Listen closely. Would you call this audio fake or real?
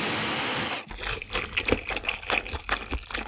real